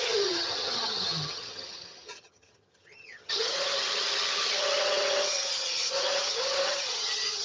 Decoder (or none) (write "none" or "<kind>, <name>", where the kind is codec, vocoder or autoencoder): vocoder, HiFi-GAN